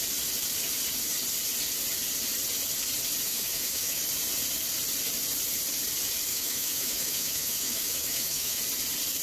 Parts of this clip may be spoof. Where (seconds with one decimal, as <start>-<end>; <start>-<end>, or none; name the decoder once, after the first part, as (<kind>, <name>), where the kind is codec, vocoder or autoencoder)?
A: 3.3-4.0 (autoencoder, DAC-VAE); 6.3-8.6